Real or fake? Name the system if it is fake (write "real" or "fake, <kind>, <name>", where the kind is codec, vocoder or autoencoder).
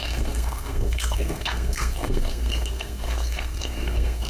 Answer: fake, codec, SNAC